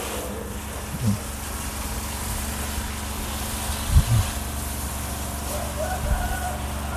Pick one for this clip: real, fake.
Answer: real